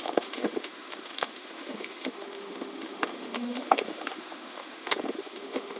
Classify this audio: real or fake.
fake